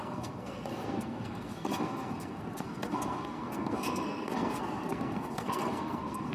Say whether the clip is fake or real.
fake